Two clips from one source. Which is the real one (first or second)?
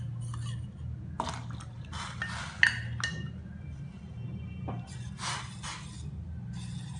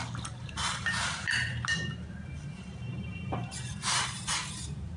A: first